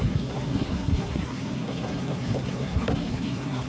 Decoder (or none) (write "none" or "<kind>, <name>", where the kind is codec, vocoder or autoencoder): codec, SNAC